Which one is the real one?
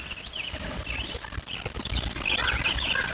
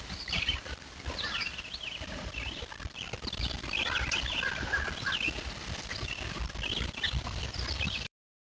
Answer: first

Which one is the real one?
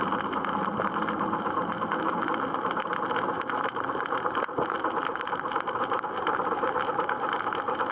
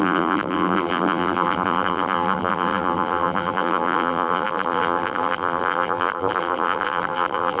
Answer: first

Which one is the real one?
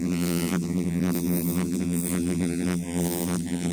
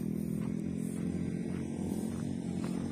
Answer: second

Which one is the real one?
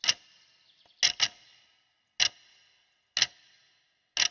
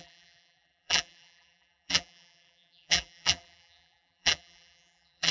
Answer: first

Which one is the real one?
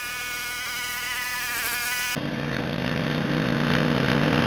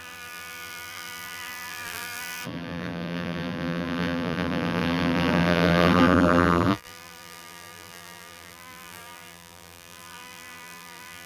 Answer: first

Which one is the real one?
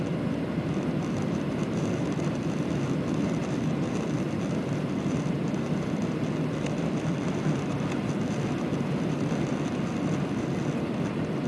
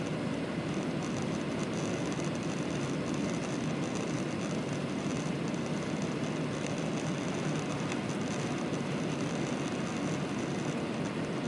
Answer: second